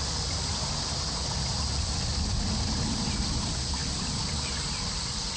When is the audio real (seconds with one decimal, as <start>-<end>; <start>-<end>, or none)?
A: 0.5-1.7; 3.8-4.5